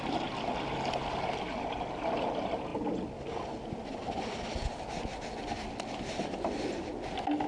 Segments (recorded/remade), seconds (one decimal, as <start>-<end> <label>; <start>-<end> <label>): 0.0-7.5 recorded